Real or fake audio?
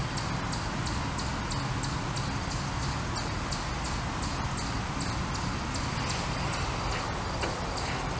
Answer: real